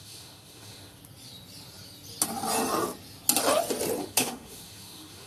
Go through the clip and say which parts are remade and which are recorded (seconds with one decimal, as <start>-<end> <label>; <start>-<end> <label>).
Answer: 0.0-1.0 remade; 1.0-4.0 recorded; 4.0-5.3 remade